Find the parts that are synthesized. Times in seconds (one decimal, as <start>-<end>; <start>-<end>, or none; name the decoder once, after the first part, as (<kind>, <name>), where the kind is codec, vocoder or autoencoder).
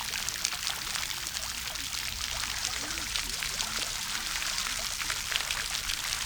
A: 2.6-4.6 (vocoder, BigVGAN v2)